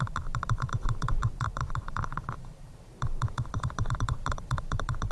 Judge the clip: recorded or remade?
remade